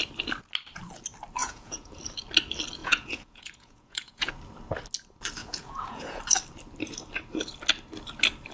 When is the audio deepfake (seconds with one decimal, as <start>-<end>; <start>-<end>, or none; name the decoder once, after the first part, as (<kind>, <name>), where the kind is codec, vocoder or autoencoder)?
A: 1.4-2.0 (vocoder, Vocos); 2.8-4.3; 5.4-6.2